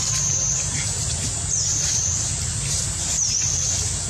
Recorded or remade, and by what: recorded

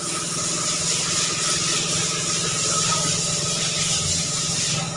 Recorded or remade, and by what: recorded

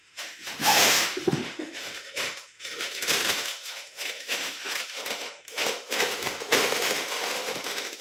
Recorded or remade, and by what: remade, autoencoder, DAC-VAE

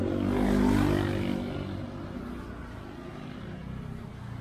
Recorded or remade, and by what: recorded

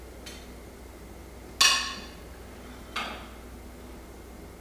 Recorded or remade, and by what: recorded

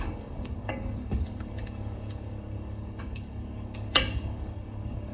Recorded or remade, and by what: remade, codec, DAC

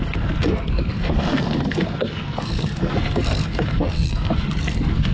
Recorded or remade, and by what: remade, codec, SNAC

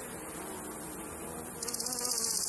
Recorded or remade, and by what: recorded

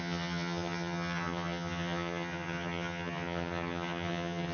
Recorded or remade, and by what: remade, vocoder, HiFi-GAN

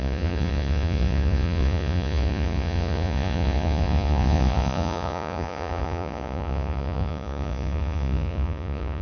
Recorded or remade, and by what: remade, vocoder, Vocos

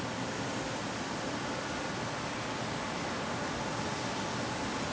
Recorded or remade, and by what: recorded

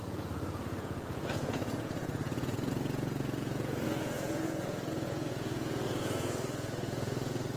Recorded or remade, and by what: remade, vocoder, Vocos